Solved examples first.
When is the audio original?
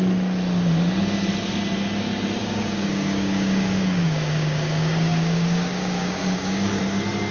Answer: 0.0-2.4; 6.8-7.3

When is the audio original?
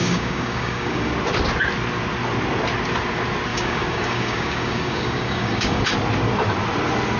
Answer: 1.1-3.5; 5.8-7.2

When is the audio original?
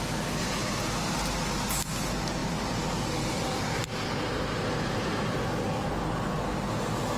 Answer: 0.0-7.2